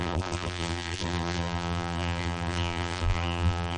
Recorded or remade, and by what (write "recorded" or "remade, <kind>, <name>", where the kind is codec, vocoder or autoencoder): remade, vocoder, BigVGAN v2